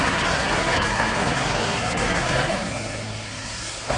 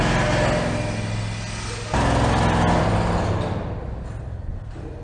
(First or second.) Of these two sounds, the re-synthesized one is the first